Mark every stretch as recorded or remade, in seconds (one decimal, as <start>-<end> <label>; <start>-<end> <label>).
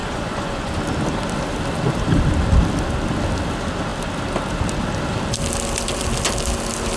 0.0-0.7 remade; 0.7-7.0 recorded